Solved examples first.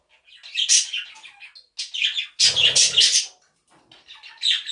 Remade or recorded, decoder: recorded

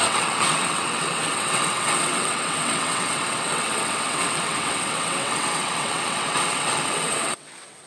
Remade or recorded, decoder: remade, vocoder, WaveNeXt